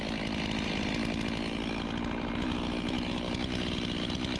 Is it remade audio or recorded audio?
recorded